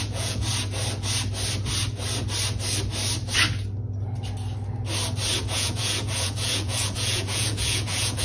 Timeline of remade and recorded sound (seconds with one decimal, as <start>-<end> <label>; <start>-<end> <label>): 0.0-0.5 remade; 0.5-5.4 recorded; 5.4-8.2 remade